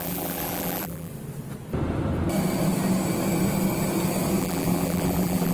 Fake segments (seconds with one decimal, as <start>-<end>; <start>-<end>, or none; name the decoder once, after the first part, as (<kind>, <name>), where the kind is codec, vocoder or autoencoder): 0.0-1.1 (vocoder, BigVGAN v2); 4.4-5.5